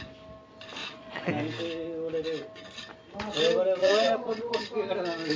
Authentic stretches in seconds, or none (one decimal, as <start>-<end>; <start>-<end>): 0.0-0.8; 1.3-3.8; 4.6-5.4